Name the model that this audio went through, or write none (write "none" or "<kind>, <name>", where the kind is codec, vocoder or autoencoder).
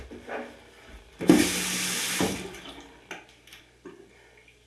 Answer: none